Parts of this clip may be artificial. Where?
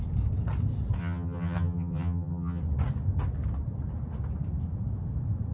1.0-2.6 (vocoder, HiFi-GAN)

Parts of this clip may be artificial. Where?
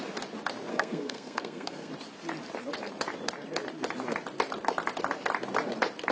0.7-1.9 (codec, SNAC)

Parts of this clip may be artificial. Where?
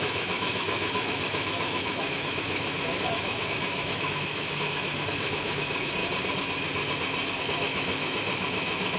0.0-6.0 (autoencoder, DAC-VAE); 7.4-9.0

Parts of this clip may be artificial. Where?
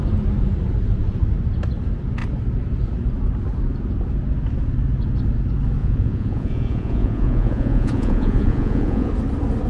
5.8-9.1 (vocoder, Vocos)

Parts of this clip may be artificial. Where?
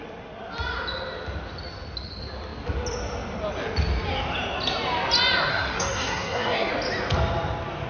5.5-6.7 (codec, SNAC)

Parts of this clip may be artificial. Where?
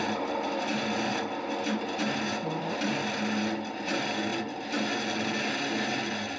0.0-1.1 (vocoder, BigVGAN v2); 2.6-4.3